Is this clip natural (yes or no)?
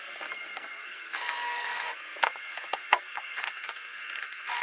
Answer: no